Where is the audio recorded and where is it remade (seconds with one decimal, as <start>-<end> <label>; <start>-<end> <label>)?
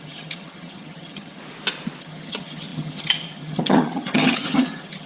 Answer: 0.0-1.4 remade; 1.4-2.0 recorded; 2.0-5.1 remade